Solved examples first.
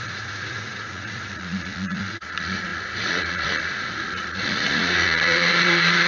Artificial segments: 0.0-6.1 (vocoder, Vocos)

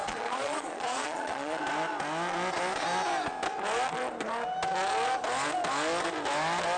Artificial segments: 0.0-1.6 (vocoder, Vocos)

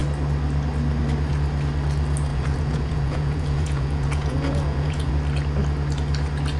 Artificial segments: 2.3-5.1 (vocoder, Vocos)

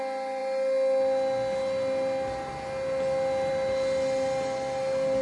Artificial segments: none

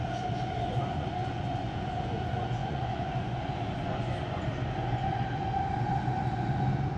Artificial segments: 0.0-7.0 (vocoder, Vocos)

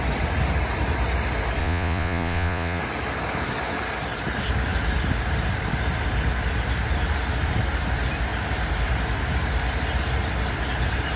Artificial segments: 1.6-2.8 (vocoder, Vocos)